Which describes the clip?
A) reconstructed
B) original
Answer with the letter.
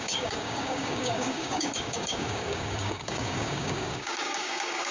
A